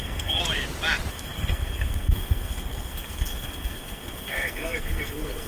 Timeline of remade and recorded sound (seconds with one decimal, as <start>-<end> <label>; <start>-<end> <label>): 0.0-0.4 remade; 0.4-1.1 recorded; 1.1-5.5 remade